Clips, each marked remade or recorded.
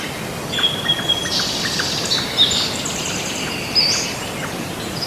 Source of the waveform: recorded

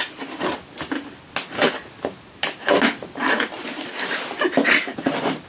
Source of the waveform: recorded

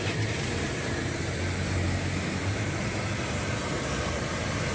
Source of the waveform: remade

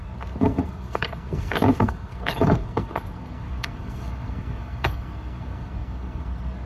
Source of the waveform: remade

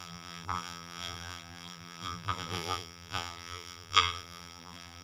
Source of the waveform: remade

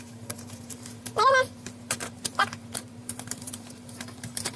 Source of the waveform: remade